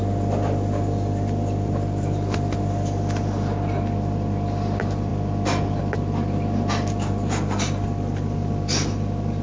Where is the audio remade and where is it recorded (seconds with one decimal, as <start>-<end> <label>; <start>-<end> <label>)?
0.0-9.4 recorded